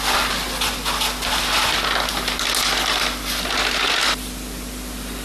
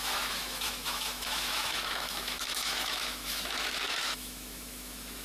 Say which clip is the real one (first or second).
first